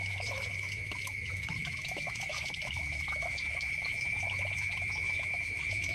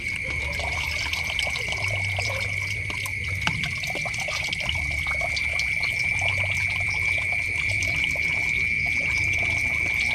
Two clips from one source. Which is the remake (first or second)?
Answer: first